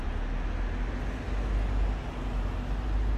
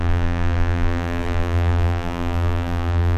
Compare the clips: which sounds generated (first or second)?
second